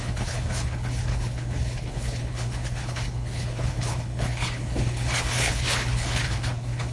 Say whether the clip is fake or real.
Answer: fake